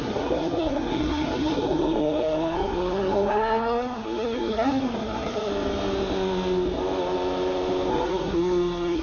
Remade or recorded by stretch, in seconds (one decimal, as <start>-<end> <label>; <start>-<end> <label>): 0.0-5.5 remade; 5.5-7.9 recorded; 7.9-9.0 remade